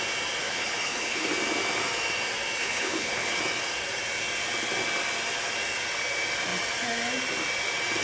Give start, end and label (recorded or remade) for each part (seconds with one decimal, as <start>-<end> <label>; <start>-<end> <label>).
0.0-0.4 recorded; 0.4-1.3 remade; 1.3-2.6 recorded; 2.6-3.4 remade; 3.4-8.0 recorded